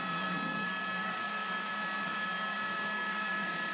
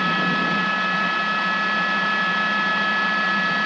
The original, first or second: second